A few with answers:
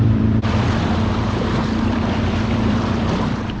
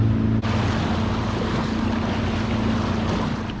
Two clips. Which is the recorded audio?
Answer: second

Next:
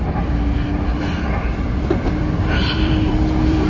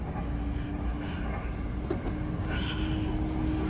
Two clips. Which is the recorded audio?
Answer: second